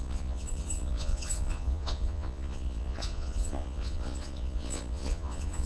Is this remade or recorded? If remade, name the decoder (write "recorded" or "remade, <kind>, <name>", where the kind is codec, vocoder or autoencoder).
remade, vocoder, Vocos